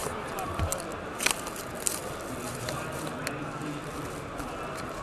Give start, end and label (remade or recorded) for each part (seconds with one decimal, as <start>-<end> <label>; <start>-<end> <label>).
0.0-2.0 recorded; 2.0-3.2 remade; 3.2-5.0 recorded